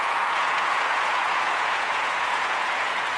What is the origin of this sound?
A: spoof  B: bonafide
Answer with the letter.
A